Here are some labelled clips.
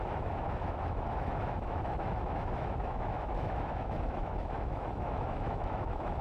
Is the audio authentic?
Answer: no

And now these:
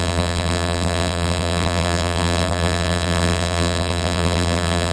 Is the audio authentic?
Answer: no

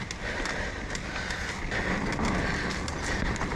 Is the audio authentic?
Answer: yes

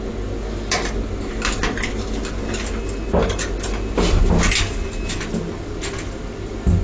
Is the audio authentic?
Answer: yes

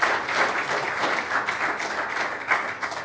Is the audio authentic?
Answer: yes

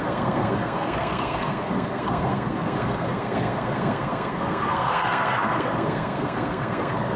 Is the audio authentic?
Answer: no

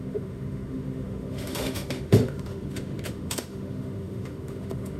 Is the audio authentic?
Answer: no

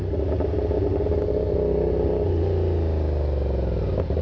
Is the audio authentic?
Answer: yes